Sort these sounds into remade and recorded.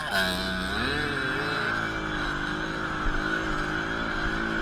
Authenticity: recorded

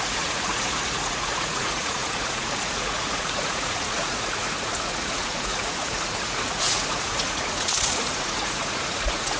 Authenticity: remade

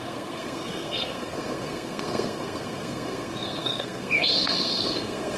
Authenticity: remade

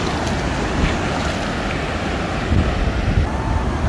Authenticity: recorded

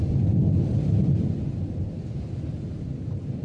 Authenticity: remade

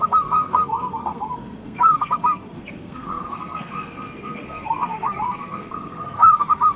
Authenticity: remade